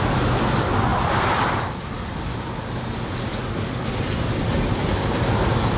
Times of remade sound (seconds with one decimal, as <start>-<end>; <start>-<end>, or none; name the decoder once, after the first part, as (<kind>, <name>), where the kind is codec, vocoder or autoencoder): none